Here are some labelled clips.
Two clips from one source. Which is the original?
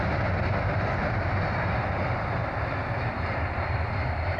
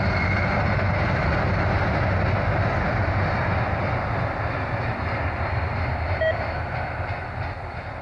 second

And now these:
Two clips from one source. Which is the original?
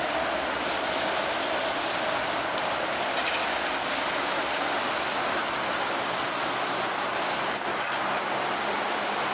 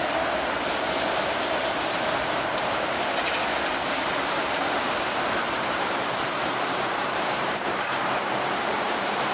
first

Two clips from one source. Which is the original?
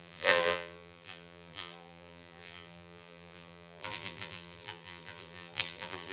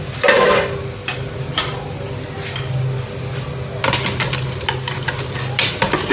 second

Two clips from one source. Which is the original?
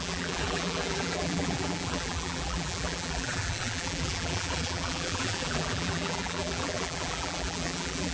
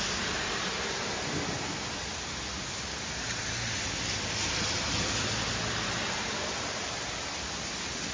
second